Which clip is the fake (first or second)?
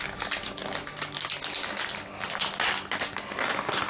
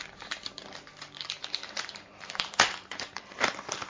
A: second